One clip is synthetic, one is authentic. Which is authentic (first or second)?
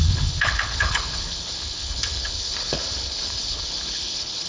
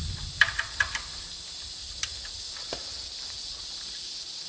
second